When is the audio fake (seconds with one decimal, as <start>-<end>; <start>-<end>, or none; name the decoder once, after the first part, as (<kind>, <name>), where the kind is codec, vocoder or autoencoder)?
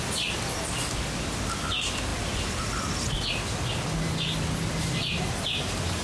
none